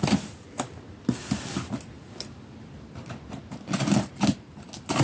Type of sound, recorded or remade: recorded